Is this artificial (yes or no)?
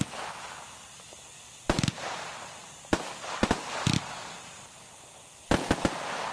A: no